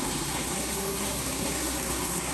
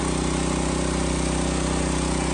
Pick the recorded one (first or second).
second